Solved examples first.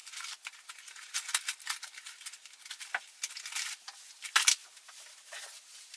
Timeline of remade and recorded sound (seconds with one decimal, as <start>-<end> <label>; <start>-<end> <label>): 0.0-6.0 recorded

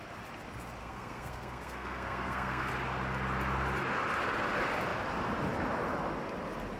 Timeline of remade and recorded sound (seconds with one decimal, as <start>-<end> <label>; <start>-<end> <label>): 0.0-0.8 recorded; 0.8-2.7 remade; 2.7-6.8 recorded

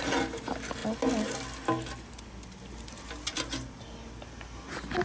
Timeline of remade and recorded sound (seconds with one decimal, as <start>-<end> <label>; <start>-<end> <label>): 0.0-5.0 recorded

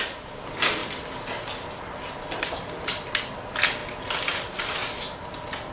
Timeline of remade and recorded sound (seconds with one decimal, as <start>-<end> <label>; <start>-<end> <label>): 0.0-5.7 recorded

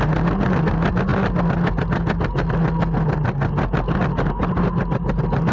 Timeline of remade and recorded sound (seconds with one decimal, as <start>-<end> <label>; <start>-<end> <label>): 0.0-5.5 recorded

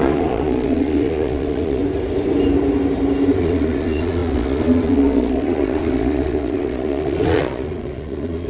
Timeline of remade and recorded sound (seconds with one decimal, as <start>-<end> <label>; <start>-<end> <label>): 0.0-1.8 remade; 1.8-3.4 recorded; 3.4-8.5 remade

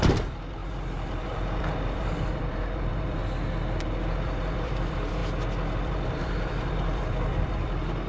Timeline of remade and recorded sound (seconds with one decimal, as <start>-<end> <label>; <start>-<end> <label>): 0.0-3.2 remade; 3.2-3.8 recorded; 3.8-5.2 remade; 5.2-5.8 recorded; 5.8-8.1 remade

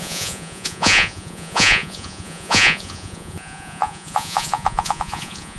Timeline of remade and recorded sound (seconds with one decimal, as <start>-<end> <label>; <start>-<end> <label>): 0.0-5.6 remade